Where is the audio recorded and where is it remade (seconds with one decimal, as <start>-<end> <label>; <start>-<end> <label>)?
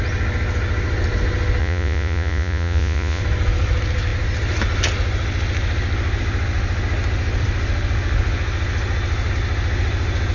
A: 0.0-1.6 recorded; 1.6-3.2 remade; 3.2-10.3 recorded